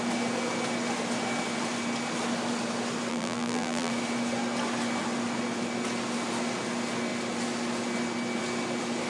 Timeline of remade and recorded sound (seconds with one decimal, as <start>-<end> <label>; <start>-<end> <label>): 0.0-3.1 recorded; 3.1-3.9 remade; 3.9-9.1 recorded